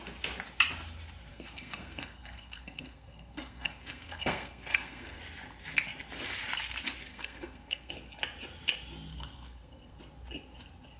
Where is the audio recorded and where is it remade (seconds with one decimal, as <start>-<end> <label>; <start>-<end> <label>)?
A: 0.0-1.3 recorded; 1.3-5.2 remade; 5.2-7.1 recorded; 7.1-7.9 remade; 7.9-9.1 recorded; 9.1-10.0 remade; 10.0-11.0 recorded